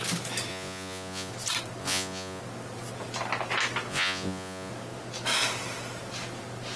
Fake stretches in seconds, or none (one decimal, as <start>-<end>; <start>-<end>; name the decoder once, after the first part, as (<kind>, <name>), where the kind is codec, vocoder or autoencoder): 0.5-1.3 (vocoder, Vocos); 1.8-2.4; 3.9-4.7